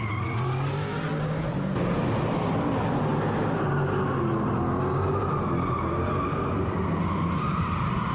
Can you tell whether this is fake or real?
real